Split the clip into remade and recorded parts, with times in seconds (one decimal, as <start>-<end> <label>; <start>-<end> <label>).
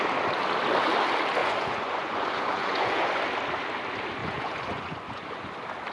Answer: 0.0-1.4 recorded; 1.4-3.2 remade; 3.2-4.2 recorded; 4.2-5.5 remade; 5.5-5.9 recorded